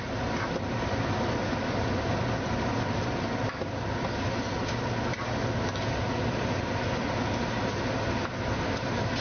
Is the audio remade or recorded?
recorded